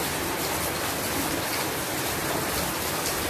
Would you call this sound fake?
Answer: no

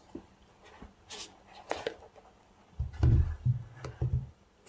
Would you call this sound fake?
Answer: no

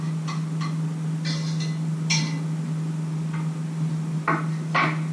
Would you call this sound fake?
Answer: no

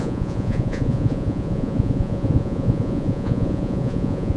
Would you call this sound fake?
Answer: yes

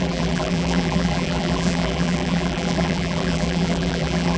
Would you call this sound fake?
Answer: yes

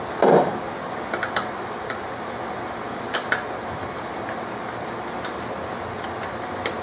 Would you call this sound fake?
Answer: no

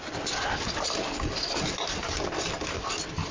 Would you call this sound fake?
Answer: no